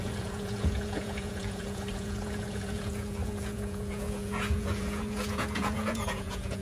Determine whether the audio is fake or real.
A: fake